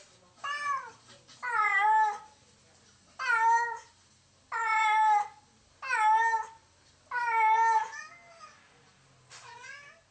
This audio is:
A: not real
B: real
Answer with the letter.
B